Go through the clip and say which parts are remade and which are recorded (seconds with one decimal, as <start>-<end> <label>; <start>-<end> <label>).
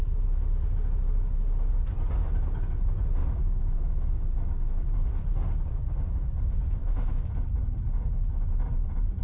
0.0-3.2 recorded; 3.2-4.1 remade; 4.1-6.8 recorded; 6.8-7.3 remade; 7.3-9.2 recorded